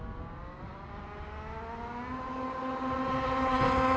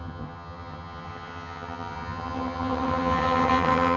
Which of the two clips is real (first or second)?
first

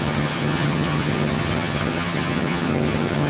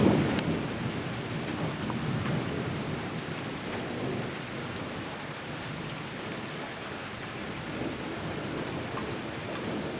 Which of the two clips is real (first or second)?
second